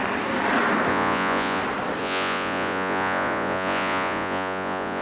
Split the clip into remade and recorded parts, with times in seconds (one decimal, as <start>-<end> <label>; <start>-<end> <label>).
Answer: 0.0-0.9 recorded; 0.9-1.6 remade; 1.6-2.0 recorded; 2.0-5.0 remade